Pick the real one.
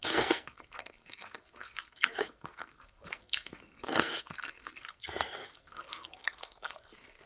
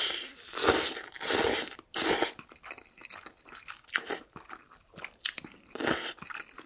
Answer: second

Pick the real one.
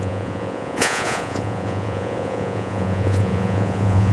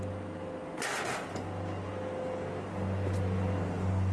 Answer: second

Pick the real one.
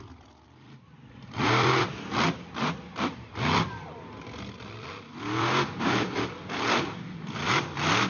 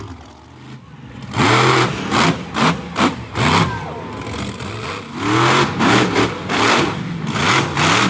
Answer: second